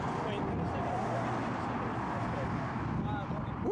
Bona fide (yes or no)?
yes